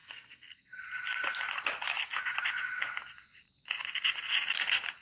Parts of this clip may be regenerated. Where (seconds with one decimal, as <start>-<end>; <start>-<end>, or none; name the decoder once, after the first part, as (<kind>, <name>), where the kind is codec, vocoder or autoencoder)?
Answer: 0.0-0.8 (codec, SNAC)